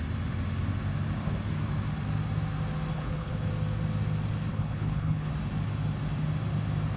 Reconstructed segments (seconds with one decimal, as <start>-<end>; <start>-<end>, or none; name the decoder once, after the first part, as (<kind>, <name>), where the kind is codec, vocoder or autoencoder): 2.9-3.5 (codec, HILCodec); 4.5-5.3